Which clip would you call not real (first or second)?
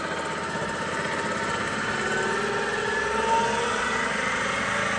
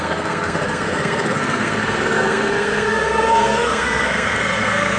second